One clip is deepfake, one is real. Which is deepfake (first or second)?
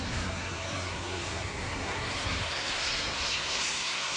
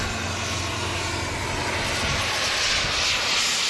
first